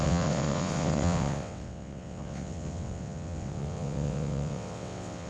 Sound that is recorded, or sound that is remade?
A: remade